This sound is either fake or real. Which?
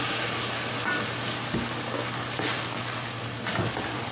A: real